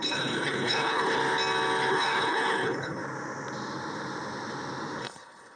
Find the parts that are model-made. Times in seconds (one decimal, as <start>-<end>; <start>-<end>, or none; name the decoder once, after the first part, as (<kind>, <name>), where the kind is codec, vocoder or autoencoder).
0.0-1.2 (codec, HILCodec); 1.9-3.0; 5.0-5.6